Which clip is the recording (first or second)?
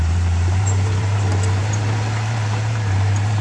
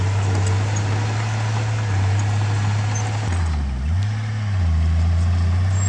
second